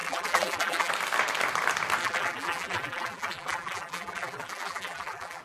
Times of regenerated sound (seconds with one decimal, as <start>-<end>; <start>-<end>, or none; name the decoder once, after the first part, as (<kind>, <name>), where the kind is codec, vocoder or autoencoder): 0.0-0.9 (vocoder, BigVGAN v2); 2.0-5.4